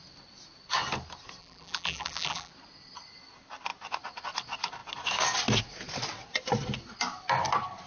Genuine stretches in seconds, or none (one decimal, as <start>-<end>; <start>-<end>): 0.0-1.4; 2.5-7.9

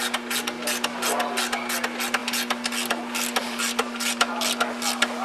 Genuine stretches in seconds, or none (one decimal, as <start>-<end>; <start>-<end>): 0.0-3.4; 4.3-5.2

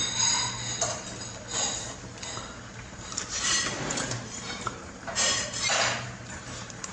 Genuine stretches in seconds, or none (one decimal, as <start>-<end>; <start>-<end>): 0.0-2.7

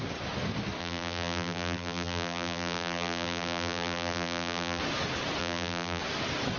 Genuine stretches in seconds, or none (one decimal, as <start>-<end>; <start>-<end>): 0.0-0.8; 4.8-5.4; 6.0-6.6

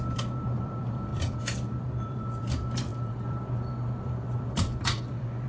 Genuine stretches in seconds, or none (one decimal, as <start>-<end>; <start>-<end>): none